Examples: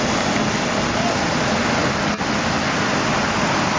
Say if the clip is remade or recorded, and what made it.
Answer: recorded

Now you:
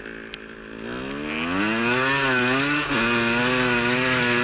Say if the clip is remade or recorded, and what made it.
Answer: recorded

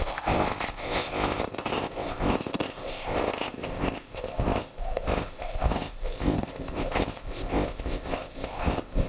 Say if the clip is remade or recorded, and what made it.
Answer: remade, codec, ZipCodec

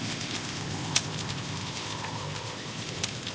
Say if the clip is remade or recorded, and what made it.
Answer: remade, codec, ZipCodec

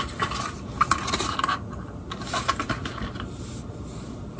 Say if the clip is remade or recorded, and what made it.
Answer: recorded